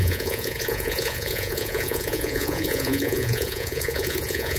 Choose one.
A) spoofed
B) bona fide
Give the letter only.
A